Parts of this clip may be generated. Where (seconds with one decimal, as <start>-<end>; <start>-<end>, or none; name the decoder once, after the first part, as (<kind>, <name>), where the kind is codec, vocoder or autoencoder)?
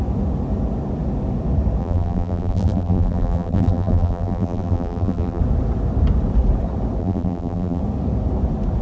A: 1.8-5.4 (vocoder, BigVGAN v2); 7.0-7.8